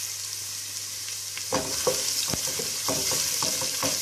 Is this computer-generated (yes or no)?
no